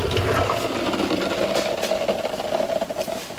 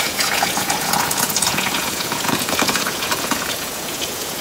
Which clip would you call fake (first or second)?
second